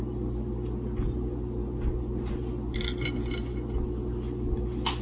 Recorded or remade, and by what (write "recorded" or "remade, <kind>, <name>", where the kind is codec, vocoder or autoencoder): recorded